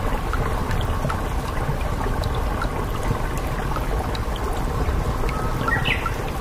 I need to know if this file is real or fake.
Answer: real